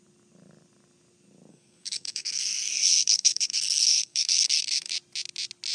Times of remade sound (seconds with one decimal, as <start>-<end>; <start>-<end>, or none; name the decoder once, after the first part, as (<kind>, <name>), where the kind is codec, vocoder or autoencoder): 1.5-4.9 (codec, SNAC)